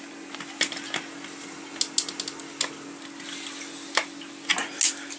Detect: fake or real real